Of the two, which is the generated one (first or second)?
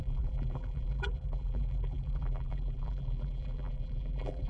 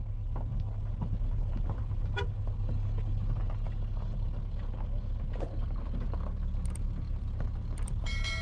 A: first